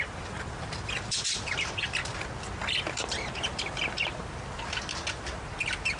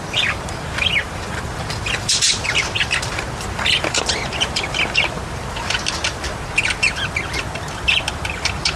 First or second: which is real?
first